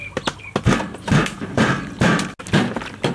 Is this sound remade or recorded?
recorded